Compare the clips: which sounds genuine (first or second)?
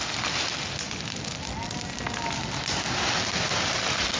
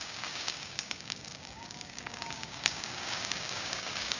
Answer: first